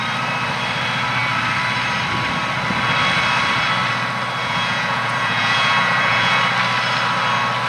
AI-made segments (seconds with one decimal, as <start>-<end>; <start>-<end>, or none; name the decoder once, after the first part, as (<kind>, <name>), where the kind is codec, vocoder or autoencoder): 4.4-6.4 (vocoder, Vocos)